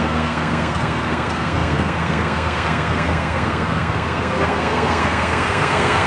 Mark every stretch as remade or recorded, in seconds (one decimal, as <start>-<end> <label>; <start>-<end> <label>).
0.0-6.1 remade